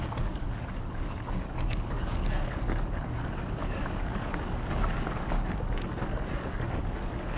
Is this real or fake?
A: fake